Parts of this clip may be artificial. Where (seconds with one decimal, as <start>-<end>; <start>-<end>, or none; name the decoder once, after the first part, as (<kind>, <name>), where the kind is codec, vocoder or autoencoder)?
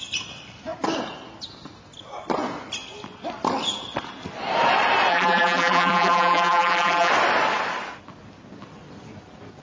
5.1-7.1 (vocoder, BigVGAN v2)